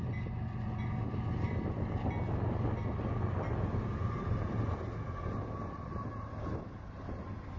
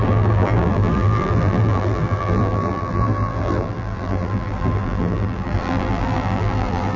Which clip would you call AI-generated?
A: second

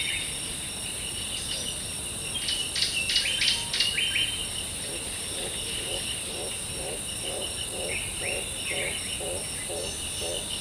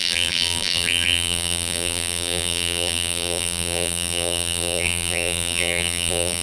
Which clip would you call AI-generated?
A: second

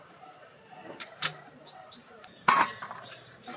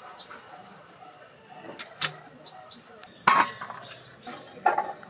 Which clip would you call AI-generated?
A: first